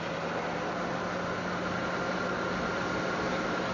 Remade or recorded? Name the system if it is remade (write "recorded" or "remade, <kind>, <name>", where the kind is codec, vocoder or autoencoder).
recorded